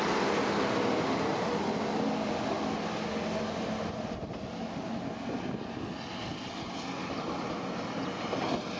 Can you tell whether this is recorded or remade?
recorded